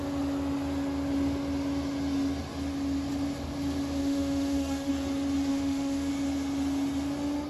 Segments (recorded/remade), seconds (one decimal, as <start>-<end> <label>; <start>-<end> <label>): 0.0-4.0 recorded; 4.0-4.9 remade; 4.9-5.5 recorded; 5.5-6.1 remade; 6.1-7.5 recorded